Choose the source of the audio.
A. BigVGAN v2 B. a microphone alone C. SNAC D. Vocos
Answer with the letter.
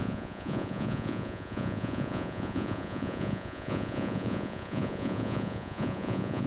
D